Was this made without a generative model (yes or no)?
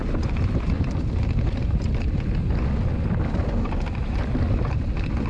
yes